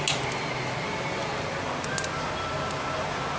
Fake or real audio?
real